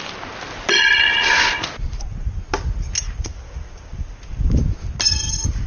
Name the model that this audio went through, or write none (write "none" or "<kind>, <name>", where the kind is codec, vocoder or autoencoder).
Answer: none